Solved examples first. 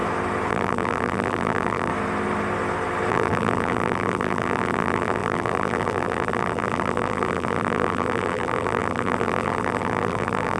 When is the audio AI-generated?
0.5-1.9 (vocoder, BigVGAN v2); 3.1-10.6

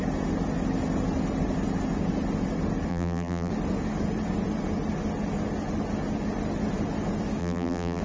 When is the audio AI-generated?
2.9-3.5 (vocoder, BigVGAN v2); 7.4-8.0

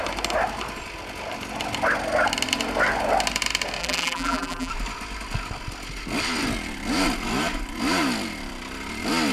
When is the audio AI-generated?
3.8-4.7 (vocoder, BigVGAN v2)